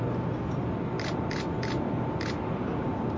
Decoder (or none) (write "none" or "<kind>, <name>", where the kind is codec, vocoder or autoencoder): none